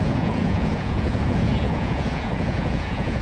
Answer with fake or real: fake